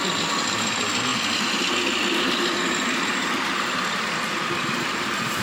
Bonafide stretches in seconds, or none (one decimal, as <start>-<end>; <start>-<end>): 0.0-5.4